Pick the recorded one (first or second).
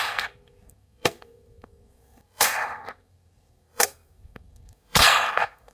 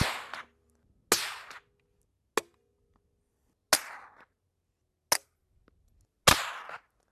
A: second